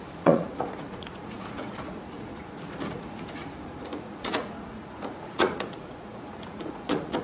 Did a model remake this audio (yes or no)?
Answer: yes